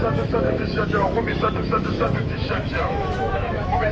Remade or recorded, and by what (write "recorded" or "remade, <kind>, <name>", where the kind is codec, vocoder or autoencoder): remade, autoencoder, DAC-VAE